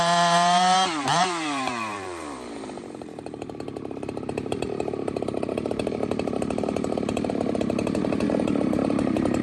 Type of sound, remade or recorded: remade